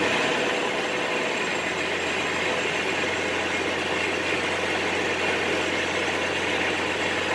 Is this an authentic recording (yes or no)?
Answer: yes